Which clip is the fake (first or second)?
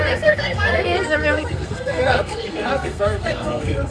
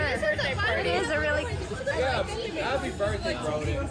first